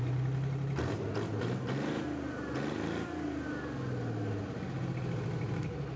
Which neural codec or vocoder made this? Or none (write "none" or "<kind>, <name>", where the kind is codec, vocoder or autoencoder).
none